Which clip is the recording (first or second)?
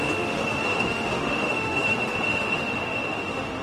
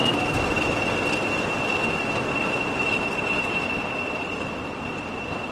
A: second